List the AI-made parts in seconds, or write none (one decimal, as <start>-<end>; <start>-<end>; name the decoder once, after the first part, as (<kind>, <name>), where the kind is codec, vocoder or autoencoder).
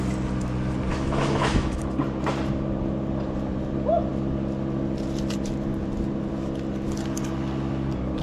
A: 0.9-1.8 (autoencoder, DAC-VAE)